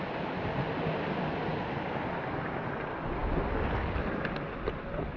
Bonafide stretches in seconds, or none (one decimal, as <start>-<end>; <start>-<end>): 0.0-5.2